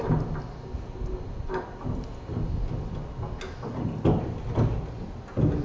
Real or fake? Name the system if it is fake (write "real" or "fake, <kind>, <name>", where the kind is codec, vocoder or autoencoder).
real